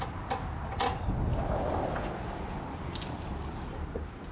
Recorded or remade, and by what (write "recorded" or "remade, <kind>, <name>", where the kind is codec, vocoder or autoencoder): recorded